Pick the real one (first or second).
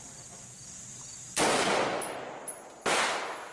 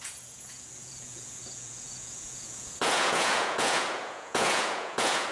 first